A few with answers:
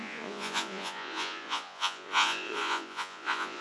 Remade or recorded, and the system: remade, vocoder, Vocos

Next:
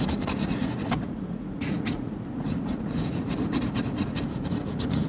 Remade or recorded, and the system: remade, vocoder, Vocos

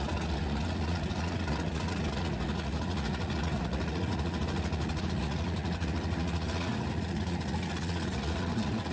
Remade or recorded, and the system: remade, vocoder, Vocos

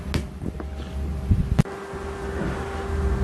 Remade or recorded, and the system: recorded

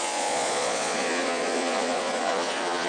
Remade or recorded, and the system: remade, vocoder, Vocos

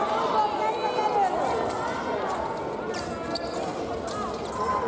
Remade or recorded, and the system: recorded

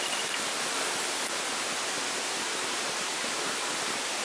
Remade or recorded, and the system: recorded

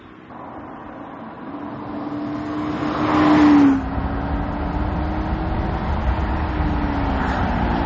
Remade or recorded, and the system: recorded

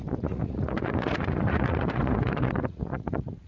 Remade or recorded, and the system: remade, vocoder, Vocos